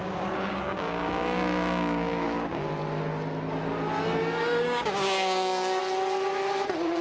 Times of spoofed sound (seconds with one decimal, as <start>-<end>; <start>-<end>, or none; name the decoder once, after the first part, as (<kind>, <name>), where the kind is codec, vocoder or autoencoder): 0.0-2.7 (codec, DAC); 4.2-5.8